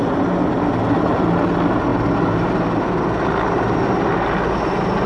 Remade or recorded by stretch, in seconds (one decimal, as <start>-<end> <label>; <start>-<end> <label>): 0.0-5.1 recorded